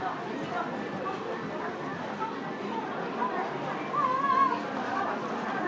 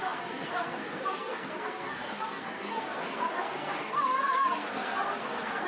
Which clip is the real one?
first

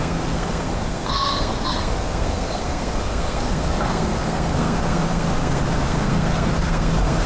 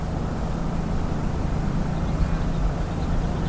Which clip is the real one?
second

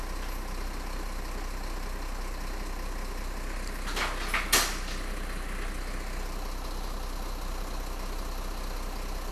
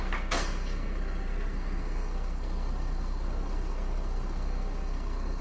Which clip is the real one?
first